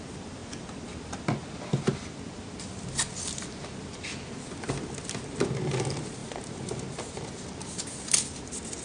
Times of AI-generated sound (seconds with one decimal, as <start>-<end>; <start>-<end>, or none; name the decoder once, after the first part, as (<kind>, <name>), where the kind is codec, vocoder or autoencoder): none